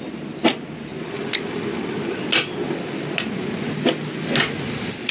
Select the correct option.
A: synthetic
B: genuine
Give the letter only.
B